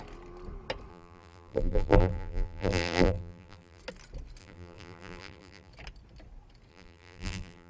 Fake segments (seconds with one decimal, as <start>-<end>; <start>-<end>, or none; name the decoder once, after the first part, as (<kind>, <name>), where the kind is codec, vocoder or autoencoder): 0.9-3.8 (vocoder, BigVGAN v2); 4.4-5.7; 6.7-7.7